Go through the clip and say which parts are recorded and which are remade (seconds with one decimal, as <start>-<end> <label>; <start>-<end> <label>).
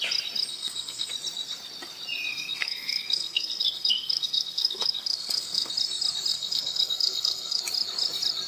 0.0-0.5 recorded; 0.5-1.1 remade; 1.1-2.3 recorded; 2.3-5.7 remade; 5.7-6.3 recorded; 6.3-7.6 remade; 7.6-8.5 recorded